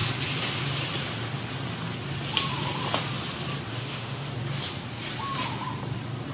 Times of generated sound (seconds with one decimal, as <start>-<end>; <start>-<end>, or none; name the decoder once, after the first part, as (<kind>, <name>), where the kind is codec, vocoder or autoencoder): 3.7-4.3 (autoencoder, DAC-VAE)